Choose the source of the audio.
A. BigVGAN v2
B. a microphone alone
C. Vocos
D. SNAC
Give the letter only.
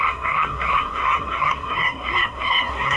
D